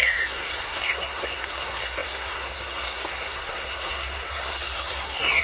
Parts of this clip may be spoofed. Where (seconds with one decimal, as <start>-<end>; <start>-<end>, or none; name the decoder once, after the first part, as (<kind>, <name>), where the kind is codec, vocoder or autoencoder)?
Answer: 0.0-5.4 (codec, SNAC)